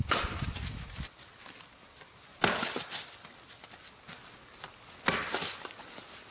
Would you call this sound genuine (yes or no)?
yes